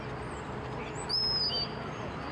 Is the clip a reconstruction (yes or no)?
no